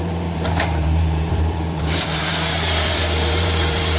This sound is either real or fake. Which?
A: fake